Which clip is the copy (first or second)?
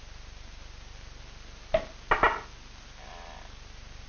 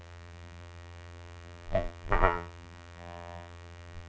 second